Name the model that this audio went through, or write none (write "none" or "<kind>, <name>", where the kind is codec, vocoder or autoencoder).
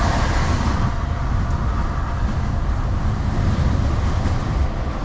none